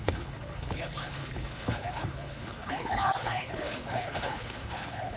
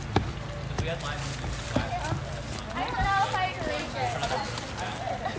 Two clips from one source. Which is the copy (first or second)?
first